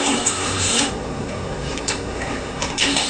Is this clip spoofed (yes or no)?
yes